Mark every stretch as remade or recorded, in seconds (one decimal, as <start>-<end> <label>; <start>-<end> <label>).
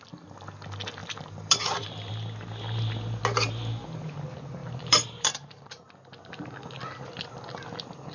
0.0-1.0 recorded; 1.0-2.1 remade; 2.1-4.6 recorded; 4.6-5.8 remade; 5.8-8.1 recorded